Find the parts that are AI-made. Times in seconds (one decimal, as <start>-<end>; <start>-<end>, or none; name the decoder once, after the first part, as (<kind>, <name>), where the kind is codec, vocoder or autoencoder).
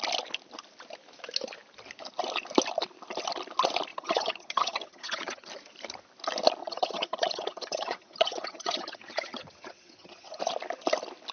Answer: 3.9-5.5 (vocoder, HiFi-GAN); 6.6-10.4